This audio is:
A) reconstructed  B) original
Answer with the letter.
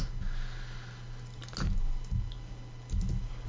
B